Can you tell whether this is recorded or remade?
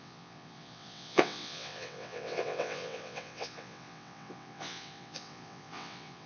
remade